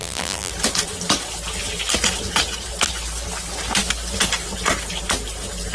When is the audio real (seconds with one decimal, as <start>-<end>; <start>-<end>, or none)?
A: 0.5-5.7